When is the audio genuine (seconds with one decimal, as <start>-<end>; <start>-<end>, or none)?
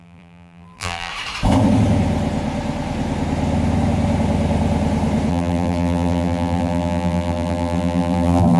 1.1-5.3